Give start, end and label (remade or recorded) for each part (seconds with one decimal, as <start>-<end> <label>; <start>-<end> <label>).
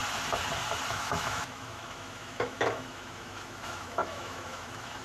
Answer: 0.0-0.9 recorded; 0.9-5.0 remade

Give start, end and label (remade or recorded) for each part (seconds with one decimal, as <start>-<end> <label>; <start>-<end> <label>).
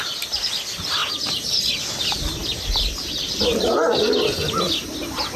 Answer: 0.0-5.4 recorded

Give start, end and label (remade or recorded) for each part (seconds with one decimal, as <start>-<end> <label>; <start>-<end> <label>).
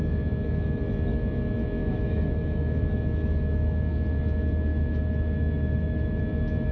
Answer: 0.0-1.8 recorded; 1.8-2.8 remade; 2.8-4.7 recorded; 4.7-6.2 remade; 6.2-6.7 recorded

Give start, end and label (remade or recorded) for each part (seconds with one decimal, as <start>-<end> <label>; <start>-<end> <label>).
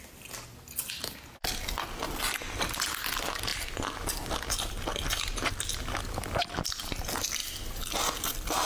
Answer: 0.0-8.7 recorded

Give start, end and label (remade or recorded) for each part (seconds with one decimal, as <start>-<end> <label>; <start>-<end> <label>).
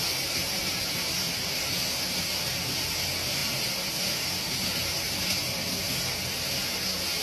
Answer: 0.0-7.2 recorded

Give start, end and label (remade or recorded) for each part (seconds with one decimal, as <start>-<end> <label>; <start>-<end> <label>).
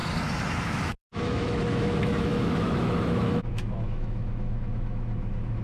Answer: 0.0-0.6 recorded; 0.6-5.6 remade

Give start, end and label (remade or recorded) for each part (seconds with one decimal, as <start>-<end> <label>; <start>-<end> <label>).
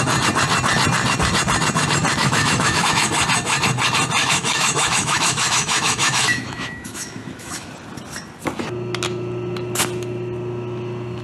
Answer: 0.0-2.2 recorded; 2.2-3.1 remade; 3.1-4.2 recorded; 4.2-7.7 remade; 7.7-11.2 recorded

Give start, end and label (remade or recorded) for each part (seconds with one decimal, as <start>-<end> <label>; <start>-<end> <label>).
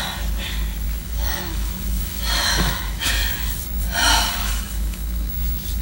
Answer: 0.0-1.0 recorded; 1.0-3.6 remade; 3.6-4.4 recorded; 4.4-5.3 remade; 5.3-5.8 recorded